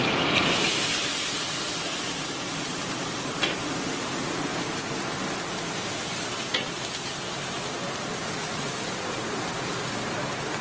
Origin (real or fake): real